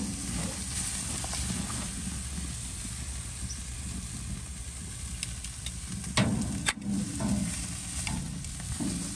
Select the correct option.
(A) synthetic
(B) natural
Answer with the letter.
B